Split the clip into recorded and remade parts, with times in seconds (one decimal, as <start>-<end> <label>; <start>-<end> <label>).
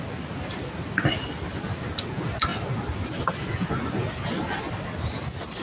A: 0.0-5.6 recorded